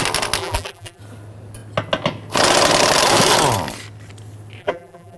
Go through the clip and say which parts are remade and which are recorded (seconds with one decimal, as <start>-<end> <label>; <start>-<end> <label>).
0.0-0.4 recorded; 0.4-1.0 remade; 1.0-4.6 recorded; 4.6-5.2 remade